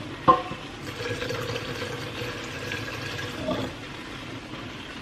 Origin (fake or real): real